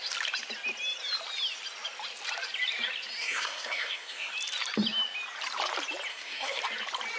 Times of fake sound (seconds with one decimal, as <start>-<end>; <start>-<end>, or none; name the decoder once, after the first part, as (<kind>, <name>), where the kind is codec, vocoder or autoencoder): 3.2-4.3 (codec, SNAC); 6.1-6.6